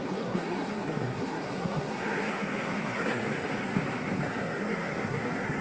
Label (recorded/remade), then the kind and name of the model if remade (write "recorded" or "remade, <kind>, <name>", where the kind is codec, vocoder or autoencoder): remade, codec, SNAC